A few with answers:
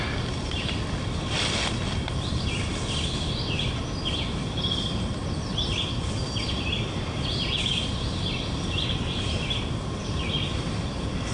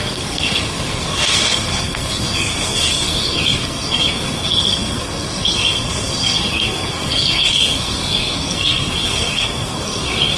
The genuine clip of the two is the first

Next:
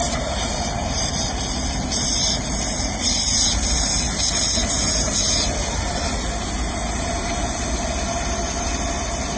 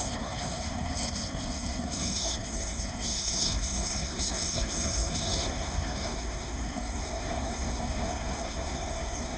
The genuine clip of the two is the first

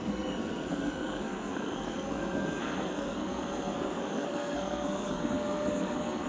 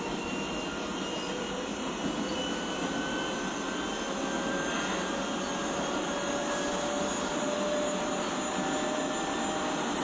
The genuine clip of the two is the second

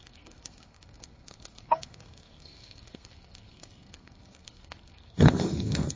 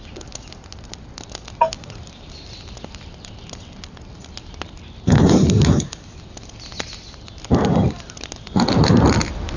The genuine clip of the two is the second